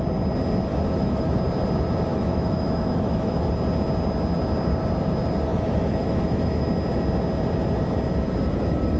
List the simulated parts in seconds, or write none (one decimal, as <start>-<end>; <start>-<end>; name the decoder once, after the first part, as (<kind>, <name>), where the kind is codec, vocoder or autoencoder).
0.7-1.4 (autoencoder, DAC-VAE); 2.1-3.5; 5.5-6.7